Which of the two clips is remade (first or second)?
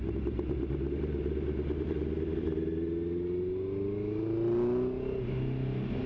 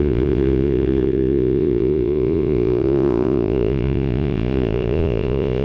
second